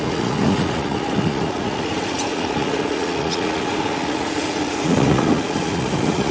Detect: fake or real fake